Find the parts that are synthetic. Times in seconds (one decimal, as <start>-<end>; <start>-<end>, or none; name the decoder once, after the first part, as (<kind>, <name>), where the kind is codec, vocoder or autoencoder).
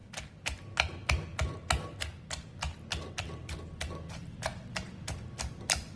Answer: none